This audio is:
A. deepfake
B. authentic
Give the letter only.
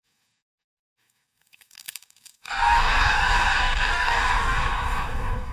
A